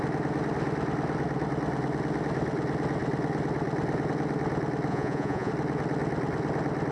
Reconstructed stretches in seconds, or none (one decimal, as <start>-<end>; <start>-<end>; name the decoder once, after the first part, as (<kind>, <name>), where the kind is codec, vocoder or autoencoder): 4.9-5.5 (vocoder, Vocos)